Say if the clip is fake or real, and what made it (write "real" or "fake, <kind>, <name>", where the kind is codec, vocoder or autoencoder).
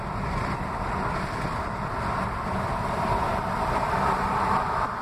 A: real